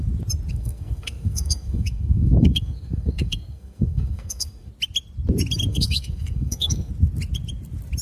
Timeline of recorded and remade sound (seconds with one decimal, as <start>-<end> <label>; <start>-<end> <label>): 0.0-0.5 recorded; 0.5-4.7 remade; 4.7-5.7 recorded; 5.7-6.9 remade; 6.9-8.0 recorded